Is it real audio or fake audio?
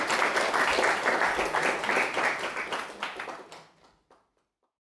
real